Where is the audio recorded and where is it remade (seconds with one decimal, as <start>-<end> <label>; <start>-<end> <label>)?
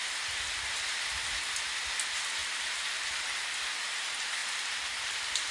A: 0.0-2.4 recorded; 2.4-3.1 remade; 3.1-5.5 recorded